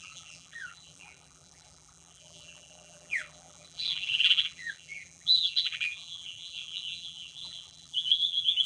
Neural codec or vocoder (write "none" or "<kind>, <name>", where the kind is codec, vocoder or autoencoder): vocoder, BigVGAN v2